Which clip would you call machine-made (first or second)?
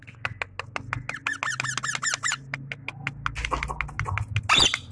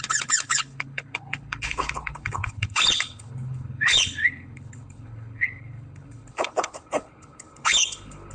second